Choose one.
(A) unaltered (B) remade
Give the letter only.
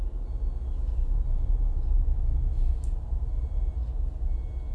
A